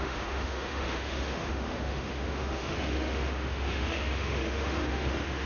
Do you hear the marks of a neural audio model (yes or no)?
yes